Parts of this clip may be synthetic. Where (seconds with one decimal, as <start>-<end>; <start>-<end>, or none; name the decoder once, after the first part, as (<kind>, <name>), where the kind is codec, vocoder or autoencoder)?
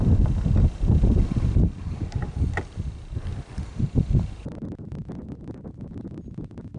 none